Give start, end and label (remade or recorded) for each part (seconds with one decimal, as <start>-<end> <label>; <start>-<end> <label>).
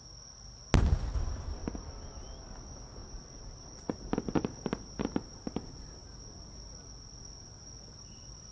0.0-8.5 recorded